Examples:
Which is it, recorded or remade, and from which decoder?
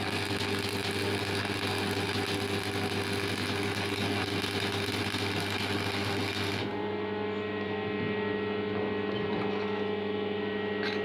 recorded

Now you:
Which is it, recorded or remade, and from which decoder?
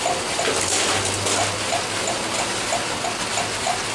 recorded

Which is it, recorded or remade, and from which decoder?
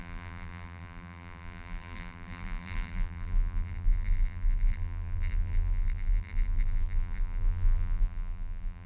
remade, vocoder, BigVGAN v2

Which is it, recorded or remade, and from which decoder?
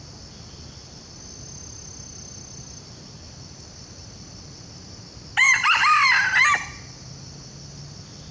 recorded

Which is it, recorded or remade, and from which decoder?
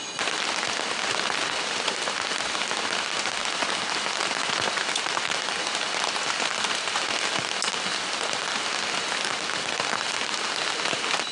recorded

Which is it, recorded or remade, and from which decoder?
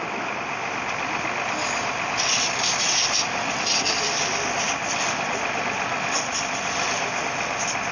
recorded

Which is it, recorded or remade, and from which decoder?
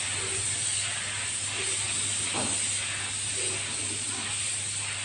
recorded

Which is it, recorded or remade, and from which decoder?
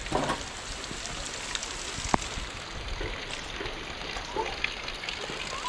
recorded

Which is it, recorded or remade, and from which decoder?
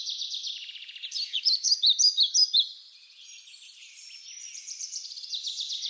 remade, vocoder, BigVGAN v2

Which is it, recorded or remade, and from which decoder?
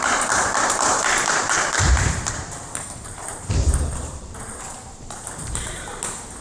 remade, vocoder, BigVGAN v2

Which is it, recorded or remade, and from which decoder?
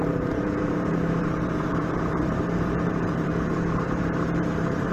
remade, vocoder, BigVGAN v2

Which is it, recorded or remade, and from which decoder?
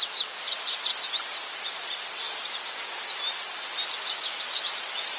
recorded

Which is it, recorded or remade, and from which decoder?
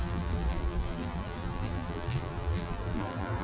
remade, vocoder, BigVGAN v2